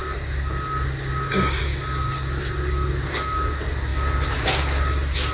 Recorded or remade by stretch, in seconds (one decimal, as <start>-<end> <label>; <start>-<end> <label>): 0.0-5.3 recorded